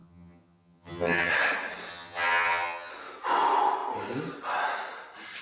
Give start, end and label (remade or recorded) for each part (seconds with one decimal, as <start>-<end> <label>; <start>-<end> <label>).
0.0-1.3 remade; 1.3-1.9 recorded; 1.9-2.9 remade; 2.9-5.4 recorded